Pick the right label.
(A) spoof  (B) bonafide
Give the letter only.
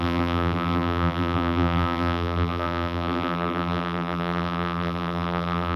A